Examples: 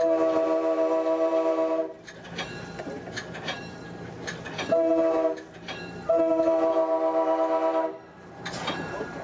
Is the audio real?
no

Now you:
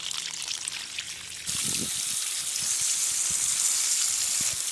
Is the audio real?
yes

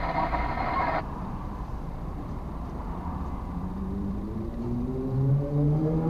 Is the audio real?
no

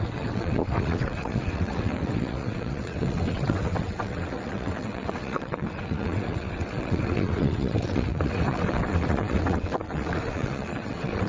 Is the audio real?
no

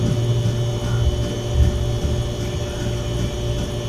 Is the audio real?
yes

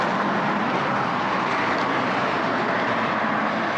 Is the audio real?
yes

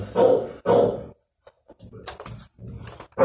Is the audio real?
yes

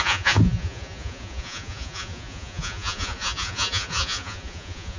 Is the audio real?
no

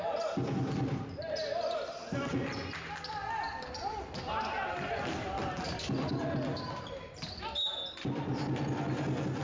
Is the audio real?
yes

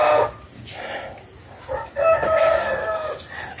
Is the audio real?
yes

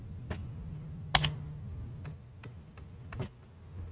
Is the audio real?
yes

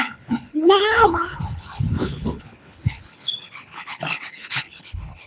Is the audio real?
no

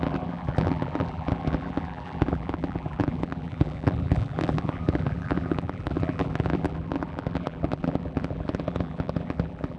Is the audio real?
no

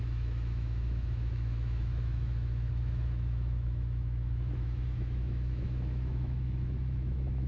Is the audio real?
no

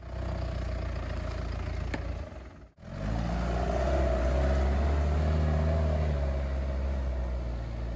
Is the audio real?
yes